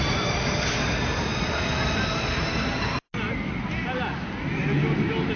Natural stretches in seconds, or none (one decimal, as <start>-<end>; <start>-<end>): 0.0-5.4